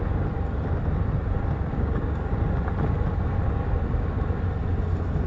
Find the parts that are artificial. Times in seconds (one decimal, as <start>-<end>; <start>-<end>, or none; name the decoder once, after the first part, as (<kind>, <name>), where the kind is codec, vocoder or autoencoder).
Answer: 1.7-2.3 (codec, DAC)

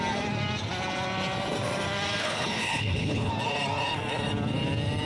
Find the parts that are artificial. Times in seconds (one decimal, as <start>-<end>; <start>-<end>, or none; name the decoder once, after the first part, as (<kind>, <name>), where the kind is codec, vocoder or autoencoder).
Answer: 2.2-3.3 (codec, HILCodec)

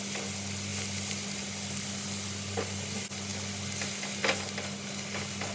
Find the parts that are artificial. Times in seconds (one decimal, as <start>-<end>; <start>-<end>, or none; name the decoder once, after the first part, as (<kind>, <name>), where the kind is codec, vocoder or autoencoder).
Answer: none

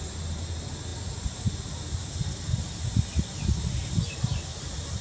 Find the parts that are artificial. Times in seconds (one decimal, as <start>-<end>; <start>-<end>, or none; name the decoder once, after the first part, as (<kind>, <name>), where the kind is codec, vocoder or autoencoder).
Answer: none

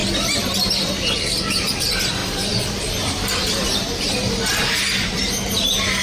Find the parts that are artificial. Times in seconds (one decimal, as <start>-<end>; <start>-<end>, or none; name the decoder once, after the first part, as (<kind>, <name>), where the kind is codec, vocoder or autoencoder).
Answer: 0.0-0.7 (vocoder, BigVGAN v2); 2.2-3.8; 4.5-5.2

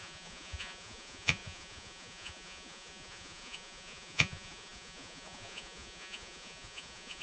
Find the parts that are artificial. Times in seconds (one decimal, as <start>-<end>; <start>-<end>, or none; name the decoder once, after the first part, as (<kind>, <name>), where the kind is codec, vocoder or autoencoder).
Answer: 0.0-7.2 (vocoder, Vocos)

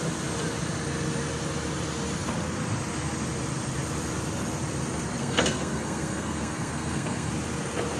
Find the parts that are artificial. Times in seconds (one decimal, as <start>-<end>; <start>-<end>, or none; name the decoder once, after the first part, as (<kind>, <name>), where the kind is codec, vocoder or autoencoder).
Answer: 5.2-7.3 (codec, SNAC)

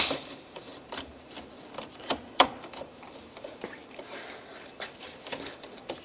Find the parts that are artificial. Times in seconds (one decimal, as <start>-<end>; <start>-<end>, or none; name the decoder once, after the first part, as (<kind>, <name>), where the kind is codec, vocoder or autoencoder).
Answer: 0.0-6.0 (vocoder, BigVGAN v2)